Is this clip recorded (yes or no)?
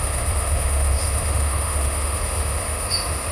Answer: no